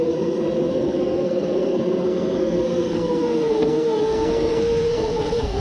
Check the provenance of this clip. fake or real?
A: fake